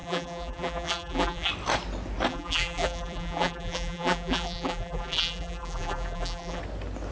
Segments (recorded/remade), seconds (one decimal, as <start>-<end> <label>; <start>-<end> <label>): 0.0-1.5 remade; 1.5-2.3 recorded; 2.3-6.6 remade; 6.6-7.1 recorded